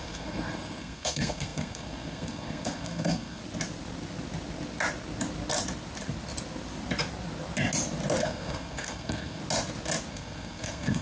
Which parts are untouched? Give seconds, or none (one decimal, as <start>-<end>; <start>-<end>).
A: 3.4-8.2; 9.4-10.1